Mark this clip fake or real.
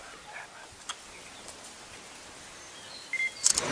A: real